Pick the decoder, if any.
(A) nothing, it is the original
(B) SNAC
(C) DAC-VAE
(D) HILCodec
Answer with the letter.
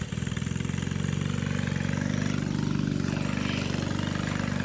A